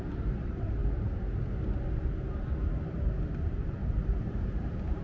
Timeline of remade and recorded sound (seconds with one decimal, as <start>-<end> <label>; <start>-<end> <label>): 0.0-0.8 remade; 0.8-3.3 recorded; 3.3-5.0 remade